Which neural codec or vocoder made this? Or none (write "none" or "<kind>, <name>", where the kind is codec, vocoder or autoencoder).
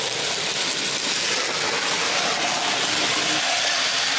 none